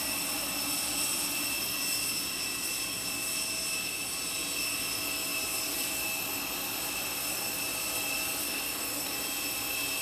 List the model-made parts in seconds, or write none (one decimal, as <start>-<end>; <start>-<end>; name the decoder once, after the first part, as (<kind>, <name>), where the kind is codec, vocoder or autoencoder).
8.4-9.1 (codec, SNAC)

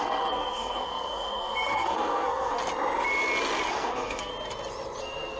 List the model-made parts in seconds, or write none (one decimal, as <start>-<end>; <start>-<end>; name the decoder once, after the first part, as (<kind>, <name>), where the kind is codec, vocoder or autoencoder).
0.0-2.6 (codec, SNAC); 3.7-4.3; 5.0-5.4